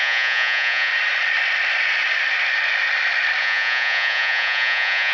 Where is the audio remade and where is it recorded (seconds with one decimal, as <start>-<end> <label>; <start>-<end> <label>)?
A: 0.0-0.9 remade; 0.9-3.4 recorded; 3.4-5.1 remade